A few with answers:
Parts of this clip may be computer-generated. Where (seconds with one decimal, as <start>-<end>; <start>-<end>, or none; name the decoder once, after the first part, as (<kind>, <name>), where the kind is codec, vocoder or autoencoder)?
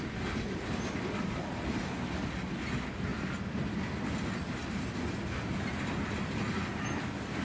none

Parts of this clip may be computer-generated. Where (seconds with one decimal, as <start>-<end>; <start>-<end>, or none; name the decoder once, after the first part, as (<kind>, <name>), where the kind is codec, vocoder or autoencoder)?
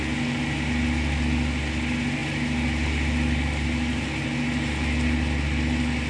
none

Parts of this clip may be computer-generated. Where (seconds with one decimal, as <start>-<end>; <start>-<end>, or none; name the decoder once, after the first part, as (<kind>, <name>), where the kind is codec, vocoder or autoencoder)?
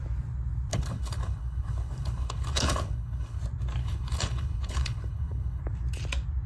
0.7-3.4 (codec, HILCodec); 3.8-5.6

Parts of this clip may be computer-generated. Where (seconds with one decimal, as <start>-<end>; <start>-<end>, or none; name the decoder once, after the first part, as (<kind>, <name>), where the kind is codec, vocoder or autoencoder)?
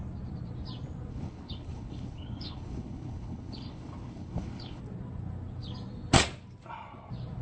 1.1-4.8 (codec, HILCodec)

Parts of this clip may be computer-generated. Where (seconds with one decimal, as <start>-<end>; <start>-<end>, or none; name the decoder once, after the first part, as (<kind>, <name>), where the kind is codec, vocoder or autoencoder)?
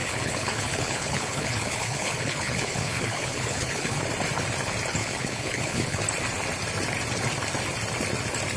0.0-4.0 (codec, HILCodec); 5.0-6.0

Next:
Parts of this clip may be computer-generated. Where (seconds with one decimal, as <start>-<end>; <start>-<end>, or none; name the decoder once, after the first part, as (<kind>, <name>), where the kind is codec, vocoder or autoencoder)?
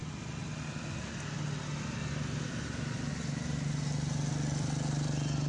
none